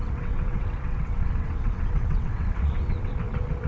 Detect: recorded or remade remade